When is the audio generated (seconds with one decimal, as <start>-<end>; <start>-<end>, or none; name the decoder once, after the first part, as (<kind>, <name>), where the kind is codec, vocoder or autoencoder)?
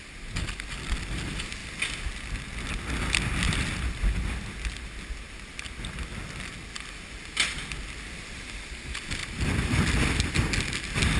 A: none